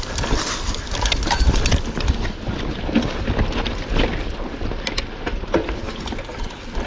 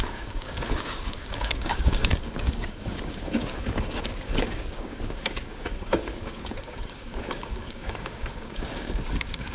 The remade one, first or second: second